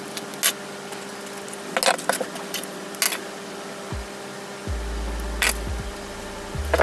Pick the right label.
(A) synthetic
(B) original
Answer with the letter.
B